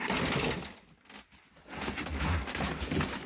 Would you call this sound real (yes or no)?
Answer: yes